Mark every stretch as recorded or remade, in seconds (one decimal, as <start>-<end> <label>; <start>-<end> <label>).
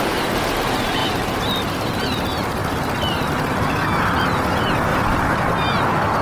0.0-1.0 recorded; 1.0-1.5 remade; 1.5-2.6 recorded; 2.6-3.3 remade; 3.3-4.9 recorded; 4.9-5.5 remade; 5.5-6.2 recorded